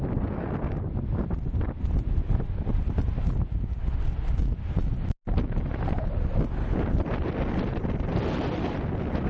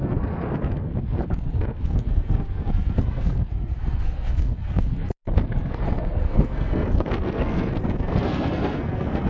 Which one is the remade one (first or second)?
second